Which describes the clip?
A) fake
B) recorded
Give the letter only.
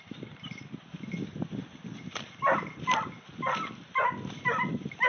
B